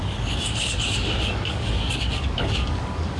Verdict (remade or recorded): remade